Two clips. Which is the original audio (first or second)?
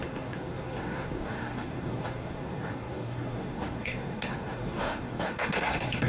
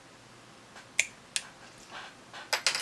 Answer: second